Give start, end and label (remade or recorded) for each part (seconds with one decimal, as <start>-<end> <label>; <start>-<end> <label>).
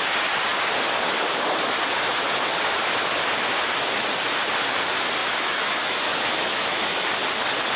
0.0-5.2 recorded; 5.2-7.1 remade; 7.1-7.8 recorded